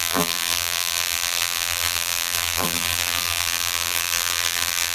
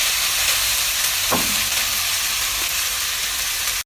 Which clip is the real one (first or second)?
second